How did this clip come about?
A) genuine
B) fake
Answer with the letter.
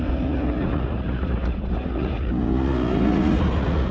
B